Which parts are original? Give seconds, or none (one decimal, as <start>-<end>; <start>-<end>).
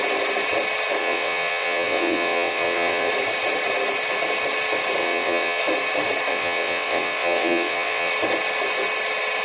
0.0-1.0; 3.1-5.0; 5.6-6.3; 8.1-9.4